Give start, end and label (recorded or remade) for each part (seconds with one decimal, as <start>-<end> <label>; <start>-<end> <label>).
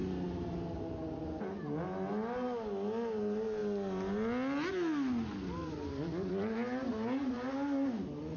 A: 0.0-8.4 recorded